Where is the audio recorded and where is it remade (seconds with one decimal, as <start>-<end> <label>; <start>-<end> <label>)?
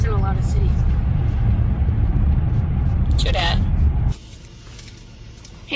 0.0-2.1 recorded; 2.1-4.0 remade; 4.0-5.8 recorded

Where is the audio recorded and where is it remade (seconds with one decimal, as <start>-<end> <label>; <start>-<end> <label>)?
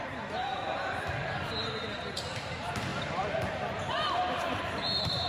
0.0-0.5 recorded; 0.5-1.5 remade; 1.5-2.9 recorded; 2.9-3.5 remade; 3.5-5.3 recorded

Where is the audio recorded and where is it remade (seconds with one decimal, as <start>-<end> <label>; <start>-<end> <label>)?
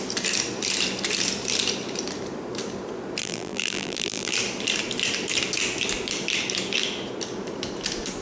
0.0-3.2 recorded; 3.2-4.3 remade; 4.3-8.2 recorded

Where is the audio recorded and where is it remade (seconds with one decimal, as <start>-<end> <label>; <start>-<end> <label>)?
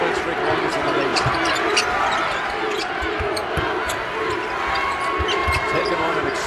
0.0-1.1 recorded; 1.1-2.6 remade; 2.6-5.4 recorded; 5.4-6.5 remade